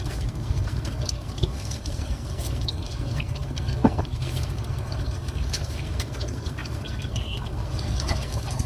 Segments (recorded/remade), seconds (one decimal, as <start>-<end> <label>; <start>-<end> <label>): 0.0-8.7 remade